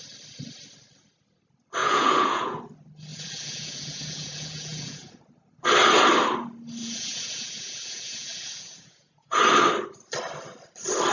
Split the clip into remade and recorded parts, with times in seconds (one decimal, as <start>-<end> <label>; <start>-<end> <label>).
0.0-1.8 recorded; 1.8-2.6 remade; 2.6-3.1 recorded; 3.1-5.2 remade; 5.2-6.8 recorded; 6.8-9.4 remade; 9.4-11.1 recorded